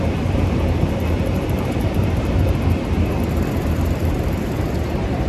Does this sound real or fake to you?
fake